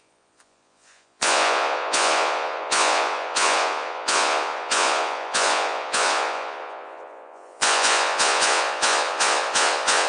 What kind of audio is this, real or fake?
fake